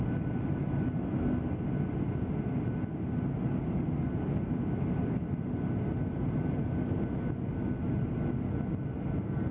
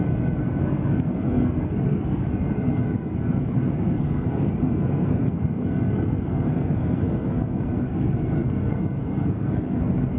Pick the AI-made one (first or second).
second